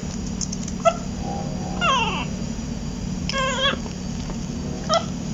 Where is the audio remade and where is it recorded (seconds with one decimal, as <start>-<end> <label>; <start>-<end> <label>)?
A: 0.0-5.3 recorded